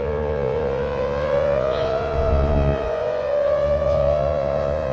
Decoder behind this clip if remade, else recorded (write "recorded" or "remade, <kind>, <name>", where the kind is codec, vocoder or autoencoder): remade, vocoder, Vocos